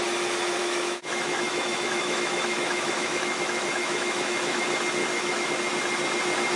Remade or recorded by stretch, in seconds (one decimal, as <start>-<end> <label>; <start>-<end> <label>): 0.0-0.6 recorded; 0.6-4.6 remade; 4.6-5.0 recorded; 5.0-5.5 remade; 5.5-6.6 recorded